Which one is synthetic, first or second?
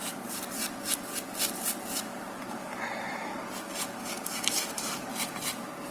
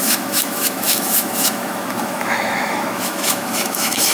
second